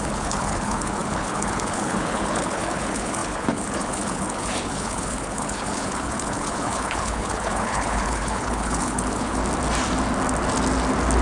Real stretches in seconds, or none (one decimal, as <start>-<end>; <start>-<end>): 9.4-11.2